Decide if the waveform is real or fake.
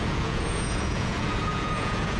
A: fake